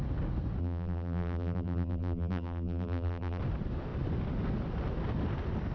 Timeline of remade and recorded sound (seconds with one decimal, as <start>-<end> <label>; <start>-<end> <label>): 0.0-0.6 recorded; 0.6-3.4 remade; 3.4-5.7 recorded